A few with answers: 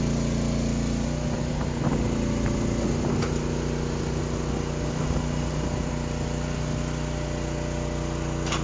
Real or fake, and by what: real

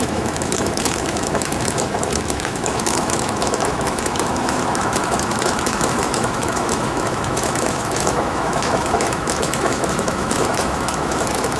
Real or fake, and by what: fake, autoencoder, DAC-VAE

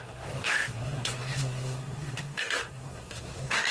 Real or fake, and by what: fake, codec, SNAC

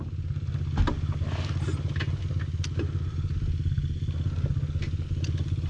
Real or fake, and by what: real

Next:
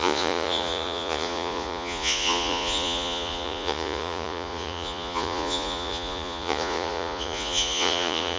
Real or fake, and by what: fake, vocoder, Vocos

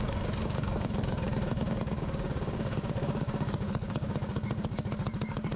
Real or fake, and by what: fake, codec, DAC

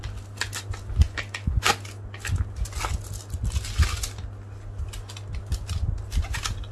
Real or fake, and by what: real